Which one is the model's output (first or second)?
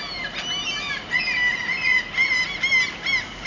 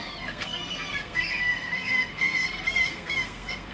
second